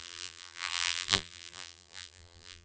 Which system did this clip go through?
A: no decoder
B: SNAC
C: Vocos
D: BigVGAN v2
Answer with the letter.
D